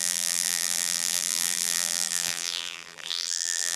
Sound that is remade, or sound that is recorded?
remade